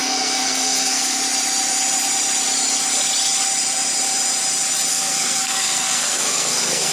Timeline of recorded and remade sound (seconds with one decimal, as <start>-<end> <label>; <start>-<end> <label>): 0.0-1.2 remade; 1.2-4.9 recorded; 4.9-6.9 remade